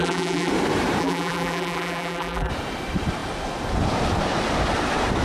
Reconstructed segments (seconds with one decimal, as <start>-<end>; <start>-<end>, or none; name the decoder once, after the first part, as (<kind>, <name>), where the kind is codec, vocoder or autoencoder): 0.0-0.5 (vocoder, BigVGAN v2); 1.0-2.5